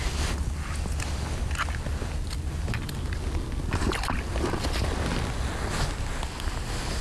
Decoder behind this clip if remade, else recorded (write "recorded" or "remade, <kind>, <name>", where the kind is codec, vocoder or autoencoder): recorded